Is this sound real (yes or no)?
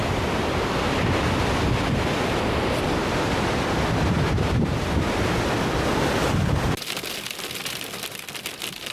no